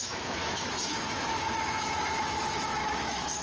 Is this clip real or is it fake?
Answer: fake